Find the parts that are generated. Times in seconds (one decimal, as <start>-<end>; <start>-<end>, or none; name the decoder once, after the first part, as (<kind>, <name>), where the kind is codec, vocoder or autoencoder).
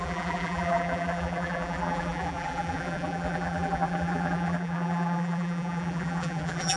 0.0-6.8 (vocoder, BigVGAN v2)